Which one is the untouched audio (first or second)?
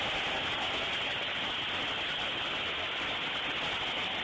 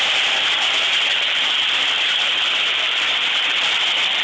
first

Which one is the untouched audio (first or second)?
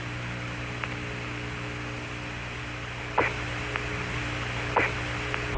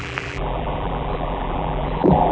first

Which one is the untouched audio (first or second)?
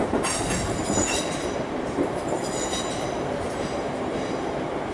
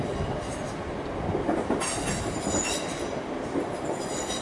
second